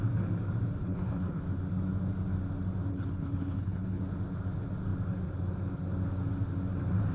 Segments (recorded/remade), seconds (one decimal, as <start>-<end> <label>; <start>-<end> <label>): 0.0-0.8 recorded; 0.8-1.4 remade; 1.4-2.9 recorded; 2.9-4.0 remade; 4.0-7.1 recorded